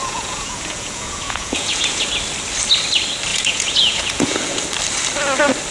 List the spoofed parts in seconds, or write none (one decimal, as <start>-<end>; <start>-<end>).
0.0-2.1; 3.3-4.6

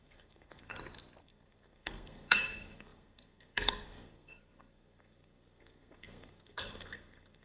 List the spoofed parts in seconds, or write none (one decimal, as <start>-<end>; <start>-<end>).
0.0-0.7; 1.2-7.4

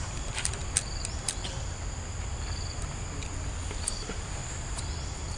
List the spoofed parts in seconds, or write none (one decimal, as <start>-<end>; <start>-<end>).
0.0-0.6; 3.8-4.4

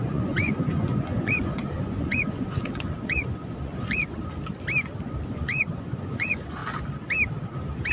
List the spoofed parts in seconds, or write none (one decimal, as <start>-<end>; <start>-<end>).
0.0-4.2; 5.3-6.6